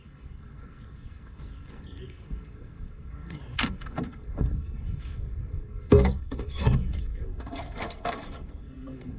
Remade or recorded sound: remade